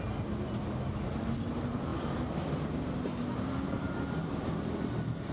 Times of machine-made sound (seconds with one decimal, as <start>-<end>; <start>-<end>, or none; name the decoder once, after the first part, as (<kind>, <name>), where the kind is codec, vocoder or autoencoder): none